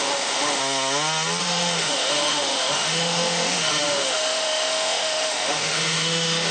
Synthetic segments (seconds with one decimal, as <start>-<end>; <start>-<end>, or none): 0.0-0.6; 1.4-6.5